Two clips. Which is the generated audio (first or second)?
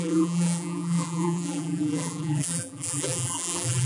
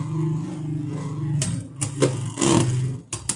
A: first